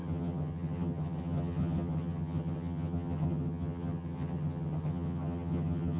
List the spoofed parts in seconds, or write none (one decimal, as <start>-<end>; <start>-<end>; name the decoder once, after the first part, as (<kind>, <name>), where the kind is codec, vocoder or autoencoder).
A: 0.0-6.0 (vocoder, HiFi-GAN)